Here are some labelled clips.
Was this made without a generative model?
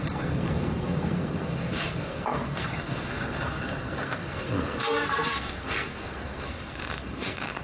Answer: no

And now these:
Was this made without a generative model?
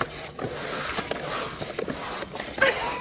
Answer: yes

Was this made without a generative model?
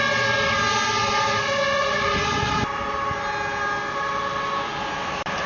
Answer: yes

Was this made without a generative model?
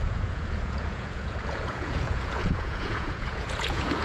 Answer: no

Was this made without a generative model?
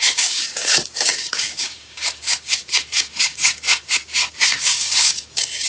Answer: no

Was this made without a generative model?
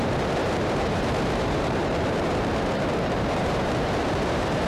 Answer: no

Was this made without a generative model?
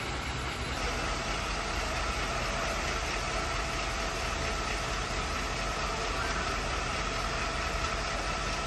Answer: yes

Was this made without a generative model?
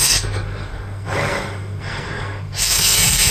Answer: no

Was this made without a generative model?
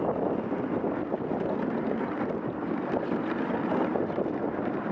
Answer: yes